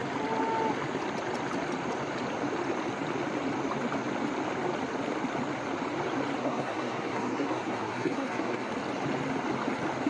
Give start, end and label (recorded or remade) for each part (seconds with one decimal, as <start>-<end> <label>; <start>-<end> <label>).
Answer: 0.0-6.4 recorded; 6.4-8.7 remade; 8.7-10.1 recorded